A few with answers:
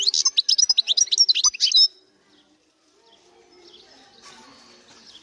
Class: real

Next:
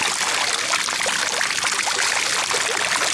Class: real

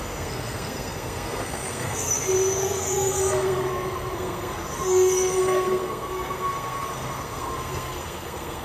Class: fake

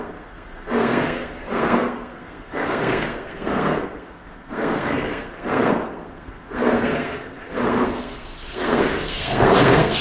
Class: fake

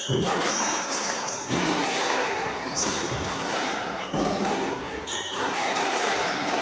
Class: fake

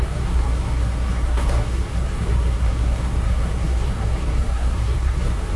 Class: fake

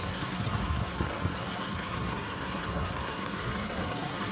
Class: fake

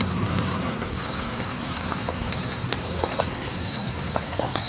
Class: fake